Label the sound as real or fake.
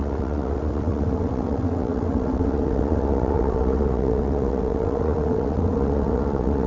fake